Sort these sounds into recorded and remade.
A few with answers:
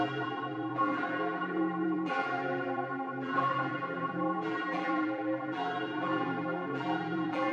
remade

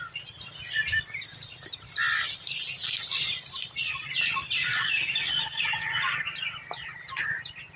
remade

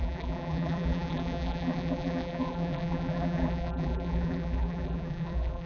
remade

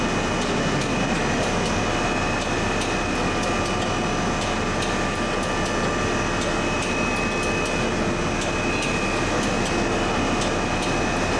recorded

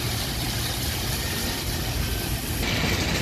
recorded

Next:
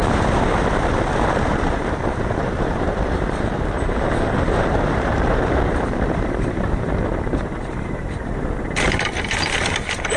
remade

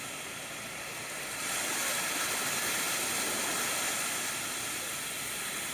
recorded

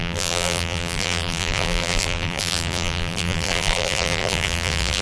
remade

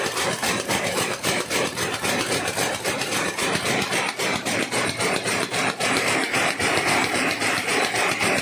remade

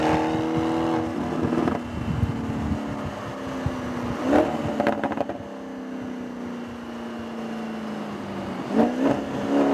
recorded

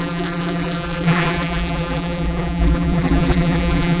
remade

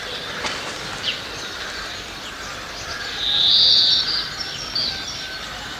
remade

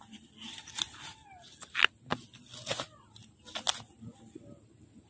recorded